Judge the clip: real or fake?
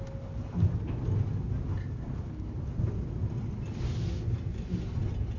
real